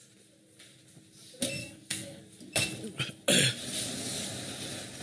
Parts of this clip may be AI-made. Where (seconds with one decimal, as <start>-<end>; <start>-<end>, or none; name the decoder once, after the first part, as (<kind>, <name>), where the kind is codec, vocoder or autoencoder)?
1.6-2.2 (codec, SNAC)